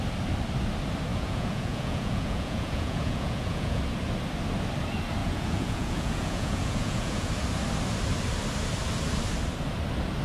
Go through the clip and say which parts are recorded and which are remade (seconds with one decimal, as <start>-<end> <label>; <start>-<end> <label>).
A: 0.0-1.1 recorded; 1.1-3.8 remade; 3.8-5.2 recorded; 5.2-7.3 remade; 7.3-10.2 recorded